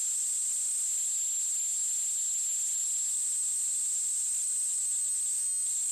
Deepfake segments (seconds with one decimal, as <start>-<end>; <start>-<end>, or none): none